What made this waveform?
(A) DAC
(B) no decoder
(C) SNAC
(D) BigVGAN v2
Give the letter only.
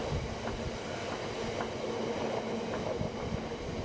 B